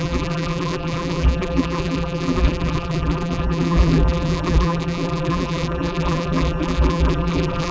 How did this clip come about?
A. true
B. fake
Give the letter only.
B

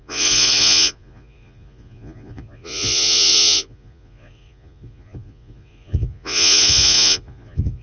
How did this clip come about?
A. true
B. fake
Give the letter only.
B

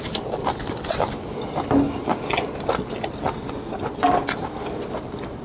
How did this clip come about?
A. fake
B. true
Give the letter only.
B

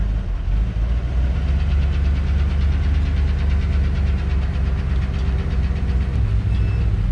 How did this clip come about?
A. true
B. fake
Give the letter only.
A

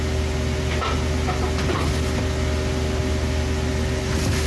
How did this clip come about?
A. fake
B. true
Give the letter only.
B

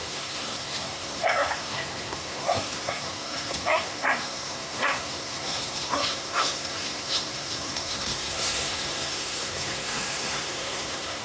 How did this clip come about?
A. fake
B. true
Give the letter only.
A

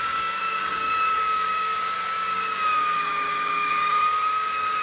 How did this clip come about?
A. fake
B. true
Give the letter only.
A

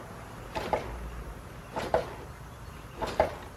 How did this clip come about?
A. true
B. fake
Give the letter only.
A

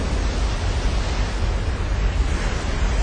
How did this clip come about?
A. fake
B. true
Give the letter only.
B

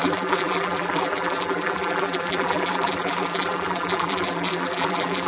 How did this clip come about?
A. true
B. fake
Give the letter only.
B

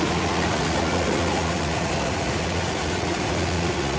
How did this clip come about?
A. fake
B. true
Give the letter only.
A